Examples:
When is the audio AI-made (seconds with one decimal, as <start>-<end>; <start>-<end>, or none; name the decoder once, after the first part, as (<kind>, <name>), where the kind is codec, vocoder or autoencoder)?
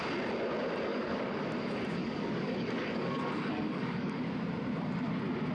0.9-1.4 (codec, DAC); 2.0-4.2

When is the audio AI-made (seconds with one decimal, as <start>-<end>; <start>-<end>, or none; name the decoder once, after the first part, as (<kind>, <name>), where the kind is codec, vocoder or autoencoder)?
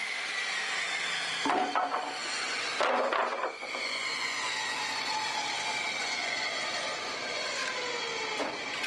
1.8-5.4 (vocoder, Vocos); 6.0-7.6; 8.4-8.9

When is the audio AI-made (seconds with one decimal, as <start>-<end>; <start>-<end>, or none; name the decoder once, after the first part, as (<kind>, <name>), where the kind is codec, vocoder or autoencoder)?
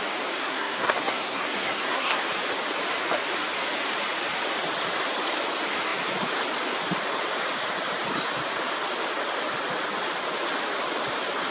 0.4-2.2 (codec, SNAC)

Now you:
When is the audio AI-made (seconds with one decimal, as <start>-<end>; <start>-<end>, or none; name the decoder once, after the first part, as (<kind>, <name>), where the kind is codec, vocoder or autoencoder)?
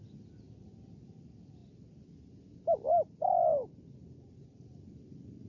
none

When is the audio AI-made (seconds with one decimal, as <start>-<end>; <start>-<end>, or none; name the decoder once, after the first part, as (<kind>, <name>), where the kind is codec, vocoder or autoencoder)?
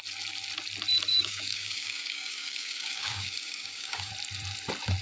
1.1-4.1 (codec, DAC)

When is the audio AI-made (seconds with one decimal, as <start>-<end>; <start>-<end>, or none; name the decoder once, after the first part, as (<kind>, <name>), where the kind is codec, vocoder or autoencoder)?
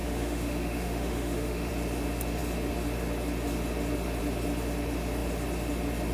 0.0-1.7 (autoencoder, DAC-VAE)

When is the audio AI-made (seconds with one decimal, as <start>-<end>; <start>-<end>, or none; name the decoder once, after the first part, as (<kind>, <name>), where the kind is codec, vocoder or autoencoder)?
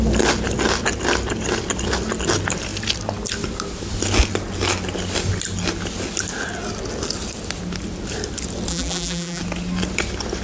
8.7-9.4 (vocoder, BigVGAN v2)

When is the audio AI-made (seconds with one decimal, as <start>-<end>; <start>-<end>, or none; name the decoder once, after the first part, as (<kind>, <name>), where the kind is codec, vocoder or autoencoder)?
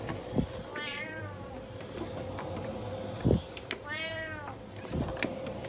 0.0-5.7 (vocoder, BigVGAN v2)